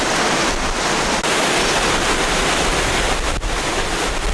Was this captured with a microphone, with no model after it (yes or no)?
yes